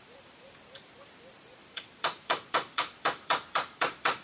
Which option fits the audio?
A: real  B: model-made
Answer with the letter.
B